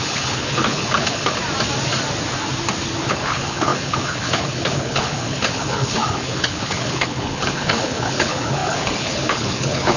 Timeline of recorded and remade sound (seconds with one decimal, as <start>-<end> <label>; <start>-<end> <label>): 0.0-1.4 remade; 1.4-3.0 recorded; 3.0-10.0 remade